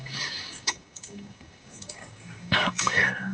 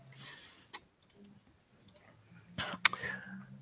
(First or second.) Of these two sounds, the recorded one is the second